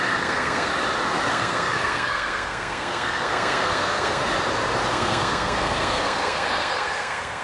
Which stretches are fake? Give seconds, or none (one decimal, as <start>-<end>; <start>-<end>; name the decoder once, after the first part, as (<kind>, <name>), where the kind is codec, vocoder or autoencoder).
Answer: 0.0-0.7 (codec, SNAC); 1.3-4.2; 4.9-7.4